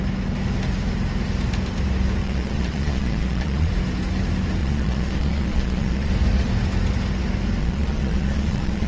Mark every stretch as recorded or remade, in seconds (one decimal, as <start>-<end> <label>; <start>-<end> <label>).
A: 0.0-2.2 recorded; 2.2-3.7 remade; 3.7-4.6 recorded; 4.6-6.1 remade; 6.1-7.6 recorded; 7.6-8.9 remade